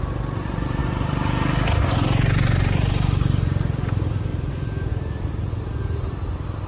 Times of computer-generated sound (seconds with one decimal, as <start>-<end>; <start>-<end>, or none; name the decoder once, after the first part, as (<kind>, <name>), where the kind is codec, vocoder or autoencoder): 0.0-0.8 (vocoder, BigVGAN v2); 1.8-4.3; 4.9-6.7